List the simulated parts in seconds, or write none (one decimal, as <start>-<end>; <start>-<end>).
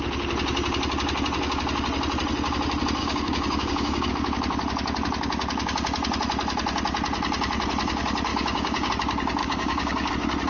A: 3.0-4.1; 8.3-8.9; 9.4-10.1